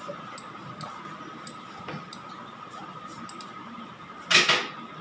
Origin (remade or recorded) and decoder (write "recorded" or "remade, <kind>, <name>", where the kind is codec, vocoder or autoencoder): recorded